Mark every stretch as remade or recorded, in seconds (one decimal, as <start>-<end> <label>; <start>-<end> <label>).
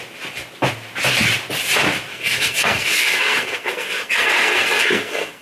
0.0-2.1 recorded; 2.1-5.4 remade